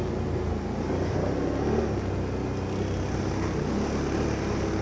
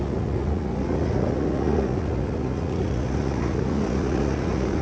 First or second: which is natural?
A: first